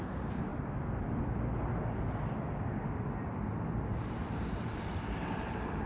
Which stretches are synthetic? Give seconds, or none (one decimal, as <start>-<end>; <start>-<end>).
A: 0.0-0.5; 4.0-5.9